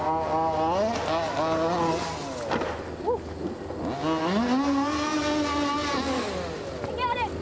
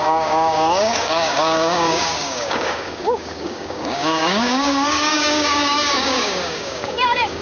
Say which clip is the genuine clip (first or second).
first